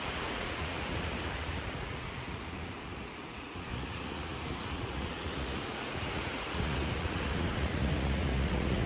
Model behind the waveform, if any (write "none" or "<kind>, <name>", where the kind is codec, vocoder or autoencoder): vocoder, Vocos